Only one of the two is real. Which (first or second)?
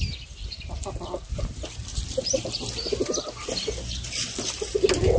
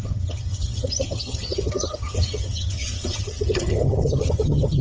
first